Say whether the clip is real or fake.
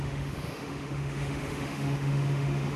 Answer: fake